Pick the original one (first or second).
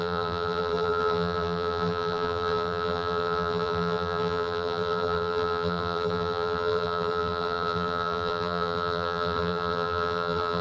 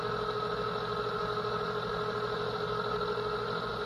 second